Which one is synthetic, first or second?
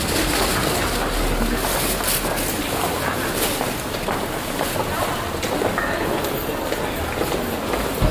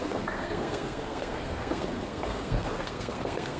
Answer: second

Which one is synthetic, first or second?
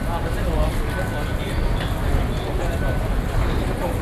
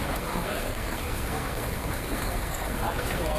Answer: second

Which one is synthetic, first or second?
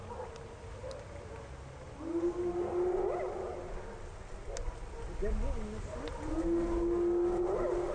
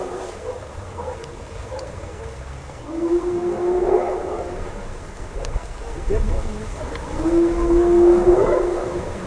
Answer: second